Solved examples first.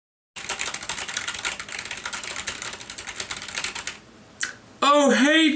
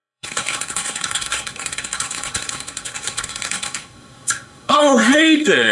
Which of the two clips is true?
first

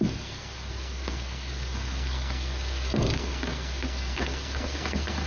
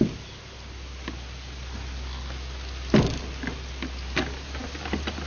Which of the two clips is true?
second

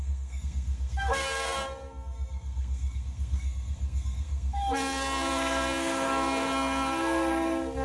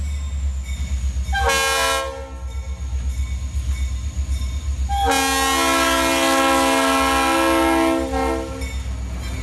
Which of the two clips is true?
second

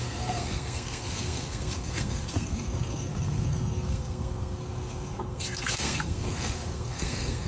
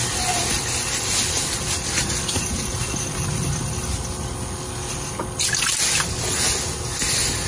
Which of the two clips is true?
second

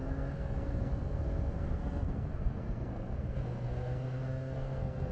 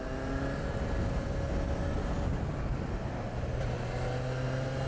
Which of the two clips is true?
second